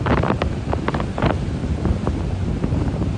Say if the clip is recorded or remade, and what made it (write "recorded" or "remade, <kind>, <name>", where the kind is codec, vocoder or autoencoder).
remade, vocoder, BigVGAN v2